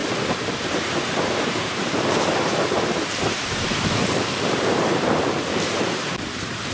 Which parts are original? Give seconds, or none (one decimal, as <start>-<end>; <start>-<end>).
none